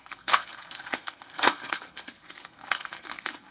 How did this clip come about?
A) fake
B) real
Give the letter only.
A